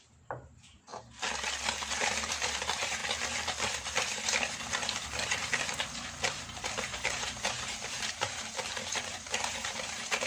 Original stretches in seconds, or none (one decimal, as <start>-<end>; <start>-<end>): 0.9-1.9; 3.0-6.4